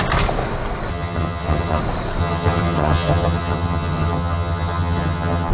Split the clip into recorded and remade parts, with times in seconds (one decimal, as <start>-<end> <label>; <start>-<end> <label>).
0.0-0.9 recorded; 0.9-1.8 remade; 1.8-2.2 recorded; 2.2-5.5 remade